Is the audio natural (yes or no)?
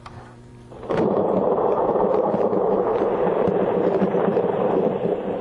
no